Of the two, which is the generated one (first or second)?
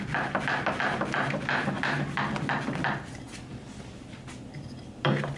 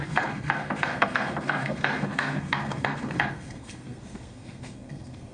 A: second